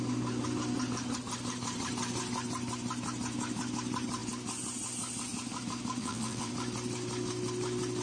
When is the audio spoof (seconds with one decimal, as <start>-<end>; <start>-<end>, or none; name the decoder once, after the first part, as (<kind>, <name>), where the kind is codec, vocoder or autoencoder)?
6.0-6.5 (vocoder, WaveNeXt)